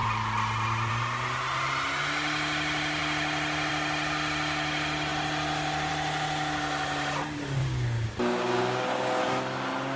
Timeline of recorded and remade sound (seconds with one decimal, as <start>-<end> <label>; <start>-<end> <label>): 0.0-7.6 recorded; 7.6-9.2 remade; 9.2-10.0 recorded